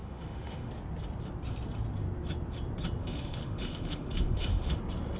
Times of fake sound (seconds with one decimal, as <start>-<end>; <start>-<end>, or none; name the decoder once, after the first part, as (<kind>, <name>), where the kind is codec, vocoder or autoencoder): 0.0-0.7 (autoencoder, DAC-VAE); 3.0-4.8